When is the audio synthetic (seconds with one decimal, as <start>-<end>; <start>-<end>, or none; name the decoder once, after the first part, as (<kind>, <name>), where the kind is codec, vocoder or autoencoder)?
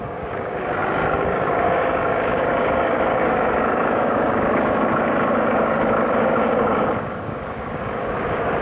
0.0-8.6 (codec, DAC)